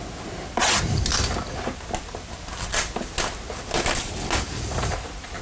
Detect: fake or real real